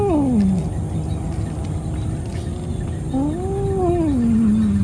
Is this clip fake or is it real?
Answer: real